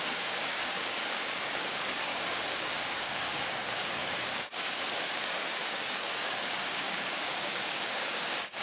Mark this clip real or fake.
fake